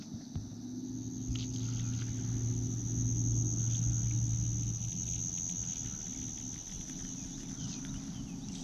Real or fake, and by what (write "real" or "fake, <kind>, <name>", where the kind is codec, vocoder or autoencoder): real